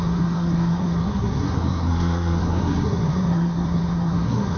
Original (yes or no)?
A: no